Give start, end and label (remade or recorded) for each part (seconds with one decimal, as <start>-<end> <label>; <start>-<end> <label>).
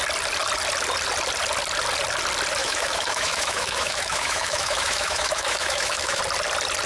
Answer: 0.0-2.6 recorded; 2.6-6.2 remade; 6.2-6.9 recorded